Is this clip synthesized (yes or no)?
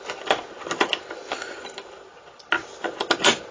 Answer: no